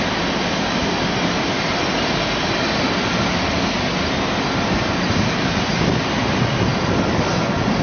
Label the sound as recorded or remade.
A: recorded